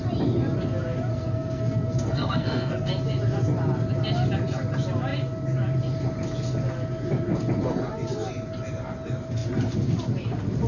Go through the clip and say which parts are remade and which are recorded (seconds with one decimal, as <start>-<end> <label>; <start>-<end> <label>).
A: 0.0-1.1 recorded; 1.1-2.9 remade; 2.9-10.7 recorded